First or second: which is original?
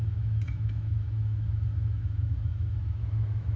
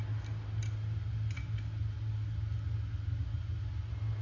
second